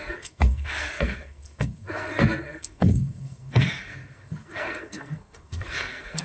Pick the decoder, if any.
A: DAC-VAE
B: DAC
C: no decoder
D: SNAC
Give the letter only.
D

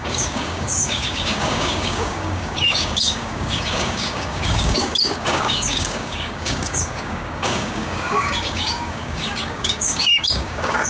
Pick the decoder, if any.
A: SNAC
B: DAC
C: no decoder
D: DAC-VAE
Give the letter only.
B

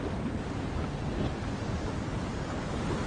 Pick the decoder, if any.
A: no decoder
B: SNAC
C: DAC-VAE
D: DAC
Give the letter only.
A